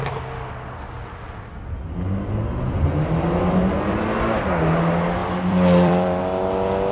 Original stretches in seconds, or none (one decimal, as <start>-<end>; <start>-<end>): 0.0-5.2; 6.2-6.9